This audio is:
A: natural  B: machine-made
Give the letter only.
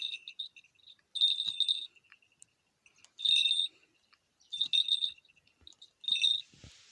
A